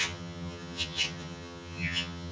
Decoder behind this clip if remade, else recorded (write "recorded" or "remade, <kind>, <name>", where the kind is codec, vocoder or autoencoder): remade, vocoder, HiFi-GAN